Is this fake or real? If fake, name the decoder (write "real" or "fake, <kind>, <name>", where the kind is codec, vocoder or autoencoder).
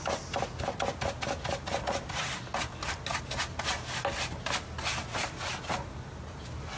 real